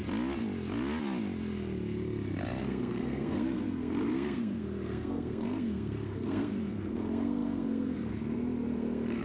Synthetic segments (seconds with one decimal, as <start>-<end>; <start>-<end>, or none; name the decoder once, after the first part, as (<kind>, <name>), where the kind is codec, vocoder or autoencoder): 2.6-9.2 (codec, SNAC)